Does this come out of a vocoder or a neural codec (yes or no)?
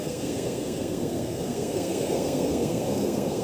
yes